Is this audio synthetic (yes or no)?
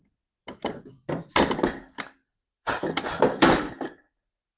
no